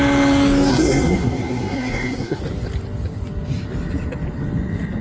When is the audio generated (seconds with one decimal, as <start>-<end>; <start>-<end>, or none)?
0.7-2.4